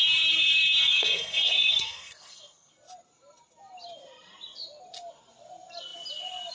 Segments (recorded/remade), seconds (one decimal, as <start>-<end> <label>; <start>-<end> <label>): 0.0-0.8 recorded; 0.8-2.7 remade; 2.7-6.5 recorded